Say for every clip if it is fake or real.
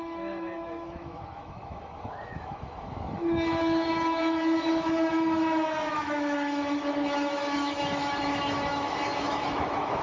fake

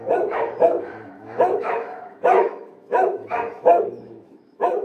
fake